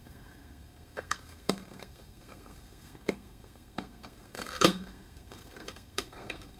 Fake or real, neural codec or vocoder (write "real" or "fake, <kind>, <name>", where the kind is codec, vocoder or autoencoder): fake, codec, SNAC